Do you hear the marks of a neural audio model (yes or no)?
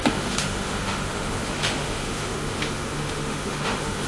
yes